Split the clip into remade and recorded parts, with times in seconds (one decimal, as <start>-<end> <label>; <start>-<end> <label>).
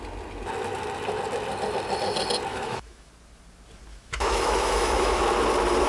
0.0-2.5 recorded; 2.5-3.1 remade; 3.1-3.9 recorded; 3.9-5.2 remade; 5.2-5.9 recorded